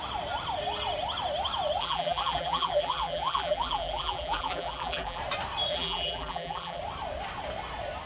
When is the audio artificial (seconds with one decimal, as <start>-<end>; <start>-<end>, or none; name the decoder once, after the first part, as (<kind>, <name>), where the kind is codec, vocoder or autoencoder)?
1.8-5.2 (vocoder, BigVGAN v2); 5.7-6.8